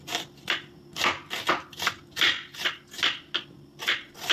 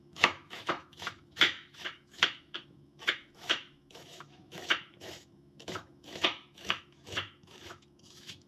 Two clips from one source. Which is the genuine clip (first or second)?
first